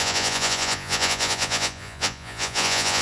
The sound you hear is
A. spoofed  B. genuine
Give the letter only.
A